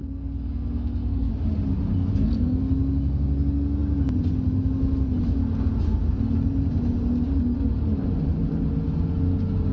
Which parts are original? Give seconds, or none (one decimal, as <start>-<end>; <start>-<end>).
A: 1.3-2.1; 2.6-9.7